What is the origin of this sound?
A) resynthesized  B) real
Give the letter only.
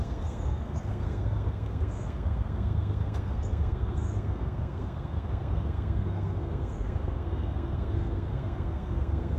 A